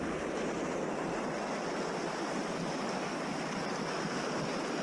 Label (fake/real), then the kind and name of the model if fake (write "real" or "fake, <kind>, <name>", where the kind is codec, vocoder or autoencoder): real